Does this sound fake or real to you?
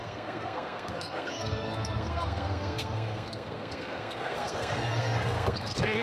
fake